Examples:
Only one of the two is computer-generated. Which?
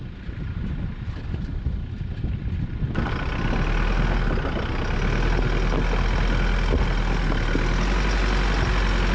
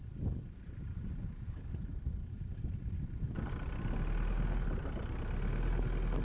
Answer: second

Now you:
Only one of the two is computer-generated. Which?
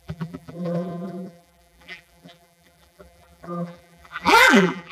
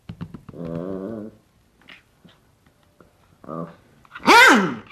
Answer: first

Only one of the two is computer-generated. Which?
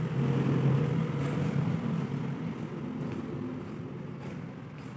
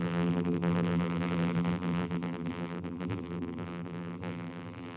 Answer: second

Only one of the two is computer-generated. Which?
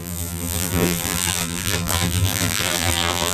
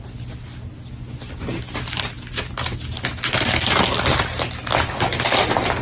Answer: first